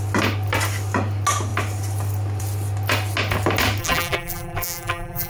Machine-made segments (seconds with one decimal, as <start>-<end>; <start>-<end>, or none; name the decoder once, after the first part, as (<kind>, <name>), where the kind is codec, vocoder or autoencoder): 3.8-5.3 (vocoder, BigVGAN v2)